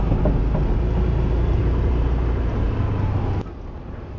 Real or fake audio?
real